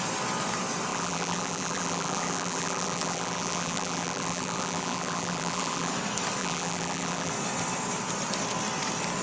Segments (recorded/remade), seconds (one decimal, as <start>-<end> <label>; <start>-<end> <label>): 0.0-0.9 recorded; 0.9-5.9 remade; 5.9-6.4 recorded; 6.4-7.3 remade; 7.3-9.2 recorded